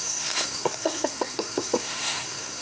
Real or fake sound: fake